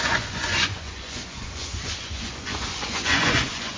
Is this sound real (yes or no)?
no